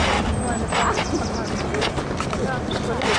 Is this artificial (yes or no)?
no